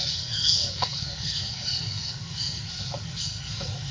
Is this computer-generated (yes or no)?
yes